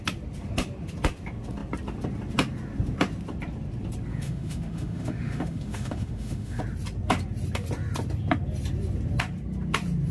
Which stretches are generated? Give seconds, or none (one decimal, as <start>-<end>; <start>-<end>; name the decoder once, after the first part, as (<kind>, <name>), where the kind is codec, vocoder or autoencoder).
4.1-6.6 (autoencoder, DAC-VAE)